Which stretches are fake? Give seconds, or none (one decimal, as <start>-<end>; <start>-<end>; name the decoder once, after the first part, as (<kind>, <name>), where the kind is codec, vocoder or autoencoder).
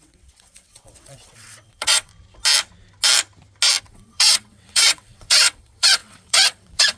0.0-2.1 (vocoder, WaveNeXt); 3.8-7.0